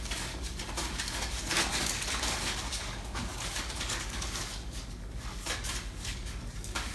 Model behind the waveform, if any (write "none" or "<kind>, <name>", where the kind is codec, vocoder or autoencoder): codec, DAC